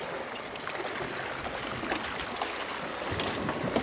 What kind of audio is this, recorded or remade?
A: recorded